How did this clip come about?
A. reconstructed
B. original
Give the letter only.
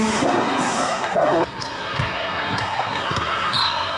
A